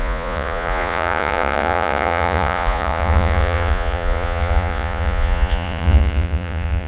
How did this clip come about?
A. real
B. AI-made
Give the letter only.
B